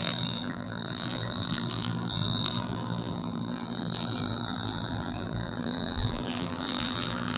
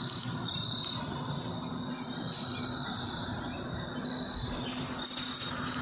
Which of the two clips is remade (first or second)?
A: first